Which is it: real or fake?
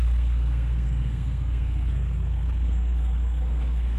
fake